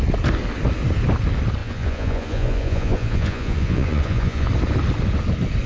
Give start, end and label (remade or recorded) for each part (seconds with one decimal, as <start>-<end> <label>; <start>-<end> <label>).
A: 0.0-1.6 recorded; 1.6-4.5 remade; 4.5-5.7 recorded